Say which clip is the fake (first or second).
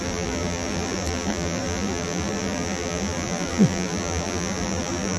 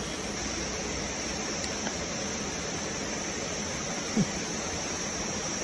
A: first